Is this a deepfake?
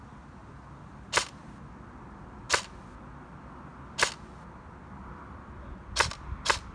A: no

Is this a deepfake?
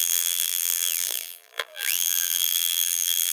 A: yes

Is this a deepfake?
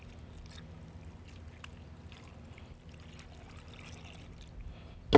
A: no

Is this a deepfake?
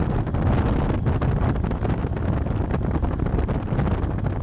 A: no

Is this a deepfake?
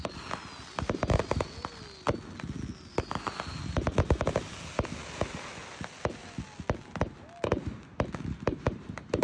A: no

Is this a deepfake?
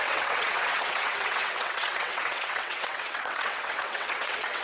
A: yes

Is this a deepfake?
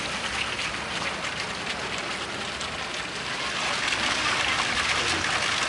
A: no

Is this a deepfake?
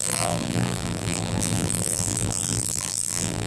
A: yes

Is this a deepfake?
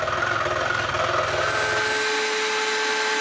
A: no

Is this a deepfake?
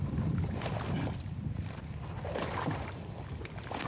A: yes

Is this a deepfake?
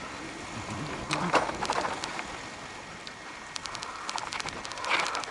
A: yes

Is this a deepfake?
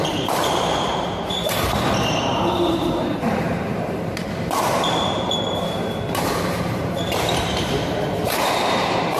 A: yes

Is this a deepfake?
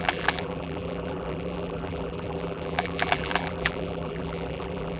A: yes